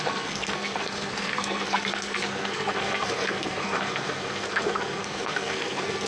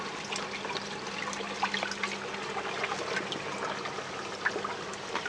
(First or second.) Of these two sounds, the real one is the second